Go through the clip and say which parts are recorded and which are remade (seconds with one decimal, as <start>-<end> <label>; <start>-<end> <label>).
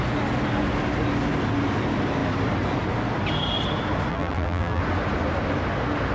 0.0-4.1 recorded; 4.1-4.8 remade; 4.8-6.1 recorded